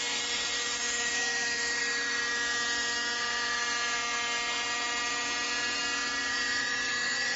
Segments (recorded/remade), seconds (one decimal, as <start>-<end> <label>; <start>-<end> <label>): 0.0-2.2 remade; 2.2-6.6 recorded; 6.6-7.4 remade